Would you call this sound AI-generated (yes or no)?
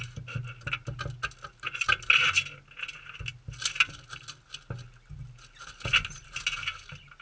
no